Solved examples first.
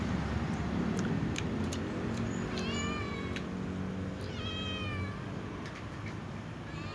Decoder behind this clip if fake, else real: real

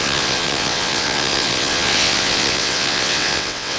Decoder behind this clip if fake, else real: fake, vocoder, WaveNeXt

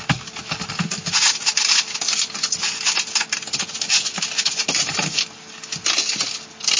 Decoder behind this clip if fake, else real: real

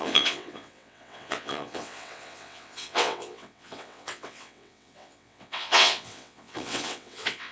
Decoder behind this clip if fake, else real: fake, vocoder, WaveNeXt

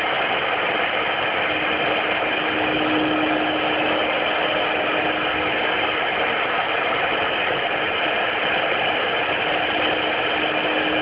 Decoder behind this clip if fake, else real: real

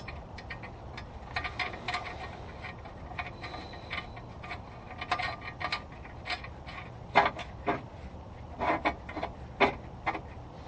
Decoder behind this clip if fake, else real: real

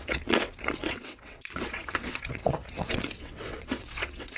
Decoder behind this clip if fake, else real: fake, vocoder, WaveNeXt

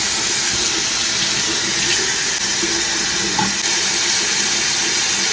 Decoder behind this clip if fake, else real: real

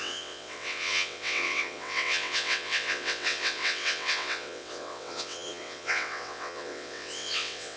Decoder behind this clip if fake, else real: fake, vocoder, WaveNeXt